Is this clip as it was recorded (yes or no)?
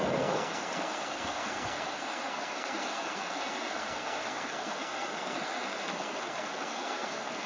no